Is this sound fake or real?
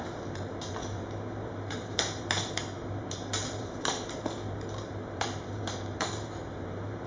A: fake